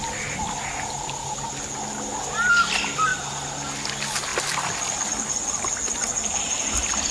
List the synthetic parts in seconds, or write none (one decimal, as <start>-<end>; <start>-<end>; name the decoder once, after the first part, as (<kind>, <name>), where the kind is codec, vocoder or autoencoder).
none